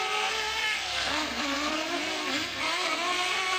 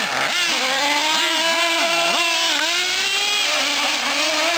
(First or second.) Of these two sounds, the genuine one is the second